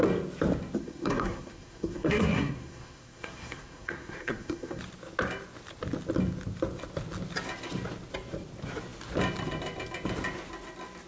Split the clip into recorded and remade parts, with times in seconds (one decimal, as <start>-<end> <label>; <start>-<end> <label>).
0.0-0.8 recorded; 0.8-4.8 remade; 4.8-11.1 recorded